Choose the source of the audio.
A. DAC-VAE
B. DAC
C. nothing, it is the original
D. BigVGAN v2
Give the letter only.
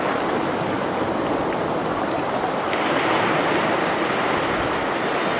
C